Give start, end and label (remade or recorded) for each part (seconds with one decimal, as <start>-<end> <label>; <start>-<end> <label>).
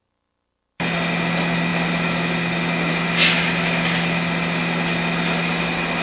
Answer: 0.0-6.0 recorded